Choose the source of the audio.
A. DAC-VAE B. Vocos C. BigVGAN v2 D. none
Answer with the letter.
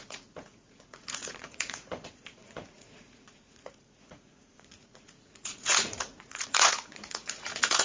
B